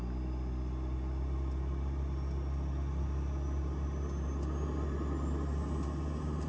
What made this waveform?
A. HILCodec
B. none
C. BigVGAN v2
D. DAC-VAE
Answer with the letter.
B